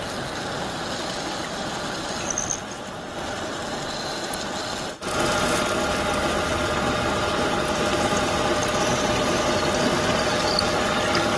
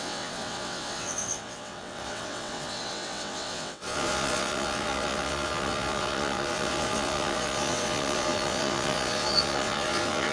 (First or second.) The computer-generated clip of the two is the second